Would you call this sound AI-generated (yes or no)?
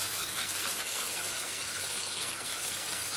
yes